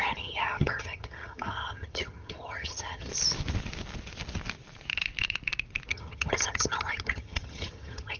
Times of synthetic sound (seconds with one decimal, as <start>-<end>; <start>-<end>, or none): 0.0-3.1; 5.9-8.2